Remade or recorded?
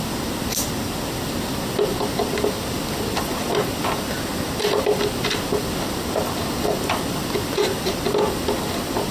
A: recorded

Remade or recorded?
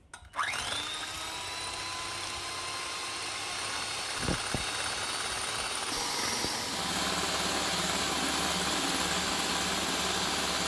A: recorded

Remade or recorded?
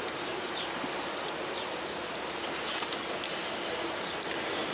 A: recorded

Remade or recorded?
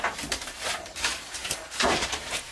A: remade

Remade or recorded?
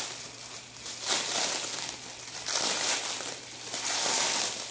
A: recorded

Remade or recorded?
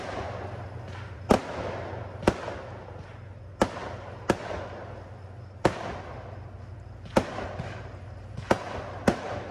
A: recorded